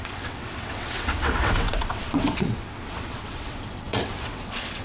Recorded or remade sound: remade